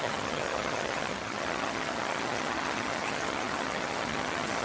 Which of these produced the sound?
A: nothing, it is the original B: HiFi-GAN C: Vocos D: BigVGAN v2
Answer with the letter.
B